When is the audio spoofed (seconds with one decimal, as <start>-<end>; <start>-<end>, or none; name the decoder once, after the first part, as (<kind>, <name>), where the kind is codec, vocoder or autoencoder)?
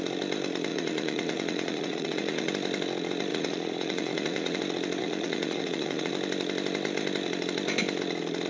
0.7-2.5 (vocoder, Vocos); 3.3-4.6; 5.0-6.1